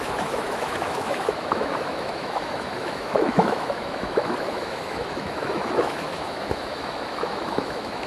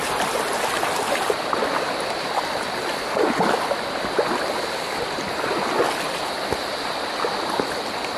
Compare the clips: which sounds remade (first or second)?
first